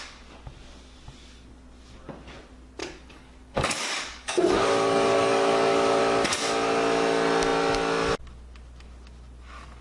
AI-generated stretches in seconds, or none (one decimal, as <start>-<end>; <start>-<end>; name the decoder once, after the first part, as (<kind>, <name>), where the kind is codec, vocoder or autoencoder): 2.8-6.0 (codec, DAC)